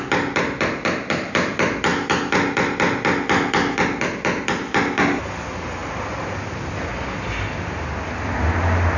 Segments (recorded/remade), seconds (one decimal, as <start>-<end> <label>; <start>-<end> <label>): 0.0-9.0 recorded

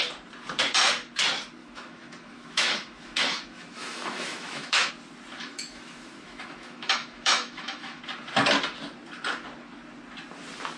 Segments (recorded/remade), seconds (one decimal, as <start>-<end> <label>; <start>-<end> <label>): 0.0-1.6 recorded; 1.6-4.9 remade; 4.9-5.4 recorded; 5.4-8.0 remade; 8.0-10.8 recorded

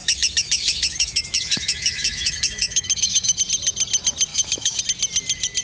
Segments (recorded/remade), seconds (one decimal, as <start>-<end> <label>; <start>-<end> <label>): 0.0-3.4 remade; 3.4-4.3 recorded; 4.3-4.8 remade; 4.8-5.6 recorded

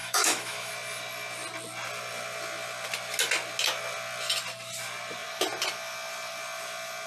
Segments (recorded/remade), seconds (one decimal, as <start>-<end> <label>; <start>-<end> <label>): 0.0-0.7 remade; 0.7-7.1 recorded

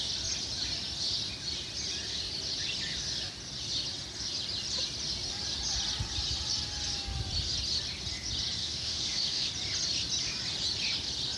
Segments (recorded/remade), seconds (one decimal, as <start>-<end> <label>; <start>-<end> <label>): 0.0-8.6 recorded; 8.6-9.5 remade; 9.5-11.4 recorded

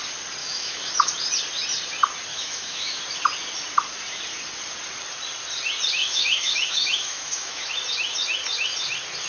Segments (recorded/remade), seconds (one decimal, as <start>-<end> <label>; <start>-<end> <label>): 0.0-0.4 recorded; 0.4-0.9 remade; 0.9-2.3 recorded; 2.3-3.0 remade; 3.0-6.0 recorded; 6.0-7.7 remade; 7.7-9.3 recorded

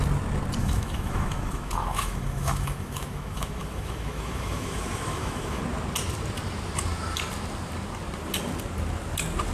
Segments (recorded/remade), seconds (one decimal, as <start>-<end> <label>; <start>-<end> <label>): 0.0-0.6 recorded; 0.6-5.6 remade; 5.6-9.5 recorded